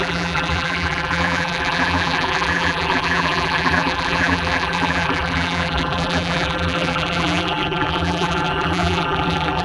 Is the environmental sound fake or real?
fake